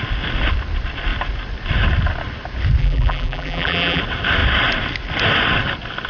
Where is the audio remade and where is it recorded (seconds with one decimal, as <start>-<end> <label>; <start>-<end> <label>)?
0.0-2.8 recorded; 2.8-4.0 remade; 4.0-6.1 recorded